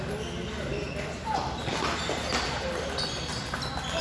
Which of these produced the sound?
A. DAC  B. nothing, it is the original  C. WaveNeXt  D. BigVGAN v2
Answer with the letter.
B